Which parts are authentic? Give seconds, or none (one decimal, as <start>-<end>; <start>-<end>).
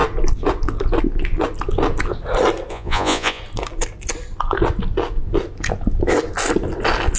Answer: 0.0-2.7; 3.4-7.2